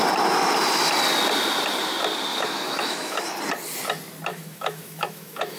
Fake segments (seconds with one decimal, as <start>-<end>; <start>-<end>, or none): 2.3-3.2; 4.3-5.6